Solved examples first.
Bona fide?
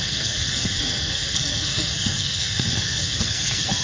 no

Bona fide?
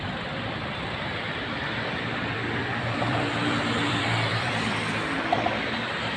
no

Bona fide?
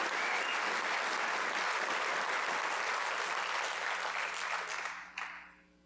yes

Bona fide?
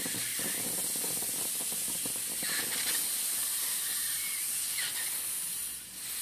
yes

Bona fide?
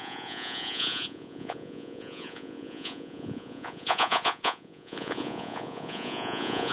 no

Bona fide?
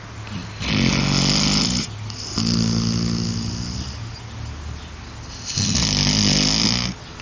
yes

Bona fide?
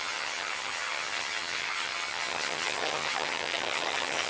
no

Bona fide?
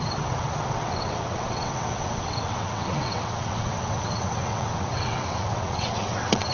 no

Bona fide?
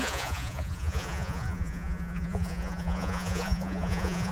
no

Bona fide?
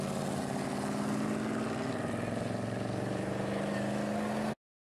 yes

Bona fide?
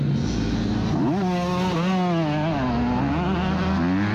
yes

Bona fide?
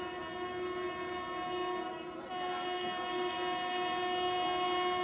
yes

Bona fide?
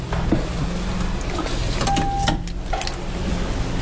yes